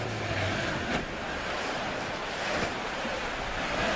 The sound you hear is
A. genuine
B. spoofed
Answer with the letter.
A